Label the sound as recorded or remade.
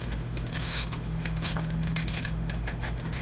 remade